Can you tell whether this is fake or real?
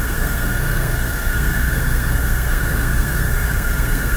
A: fake